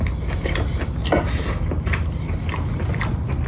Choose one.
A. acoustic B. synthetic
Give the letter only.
A